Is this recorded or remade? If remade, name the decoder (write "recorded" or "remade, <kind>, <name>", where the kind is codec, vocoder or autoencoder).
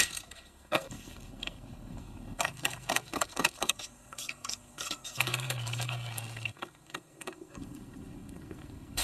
remade, codec, SNAC